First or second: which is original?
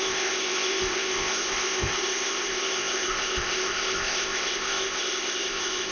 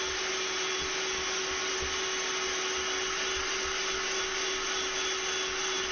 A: second